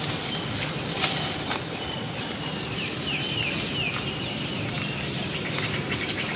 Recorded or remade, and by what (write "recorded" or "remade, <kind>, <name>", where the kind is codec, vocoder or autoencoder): remade, vocoder, BigVGAN v2